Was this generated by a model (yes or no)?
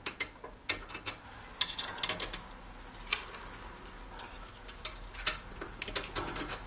no